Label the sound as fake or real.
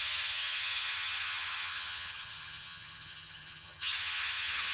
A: fake